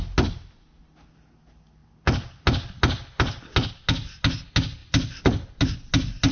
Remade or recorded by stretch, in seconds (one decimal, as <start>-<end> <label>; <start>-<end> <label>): 0.0-6.3 recorded